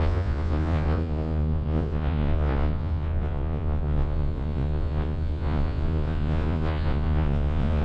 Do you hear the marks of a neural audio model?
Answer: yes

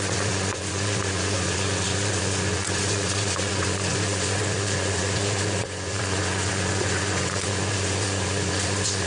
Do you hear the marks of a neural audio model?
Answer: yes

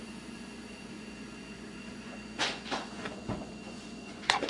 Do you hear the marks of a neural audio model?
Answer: yes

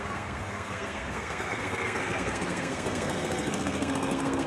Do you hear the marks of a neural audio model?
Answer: yes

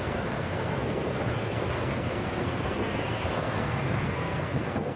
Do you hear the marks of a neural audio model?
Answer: yes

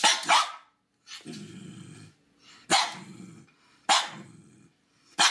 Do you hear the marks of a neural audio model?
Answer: no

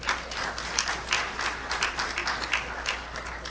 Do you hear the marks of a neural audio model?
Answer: no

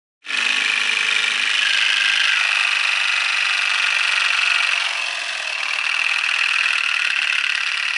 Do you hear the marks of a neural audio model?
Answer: no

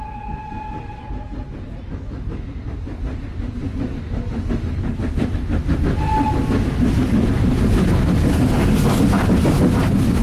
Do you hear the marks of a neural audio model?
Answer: no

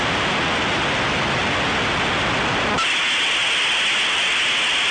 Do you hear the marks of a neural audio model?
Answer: no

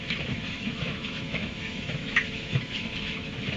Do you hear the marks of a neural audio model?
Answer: yes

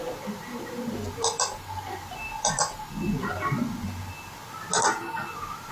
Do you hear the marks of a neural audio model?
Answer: no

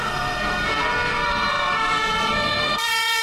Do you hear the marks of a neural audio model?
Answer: yes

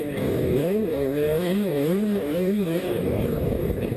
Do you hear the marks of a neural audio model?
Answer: yes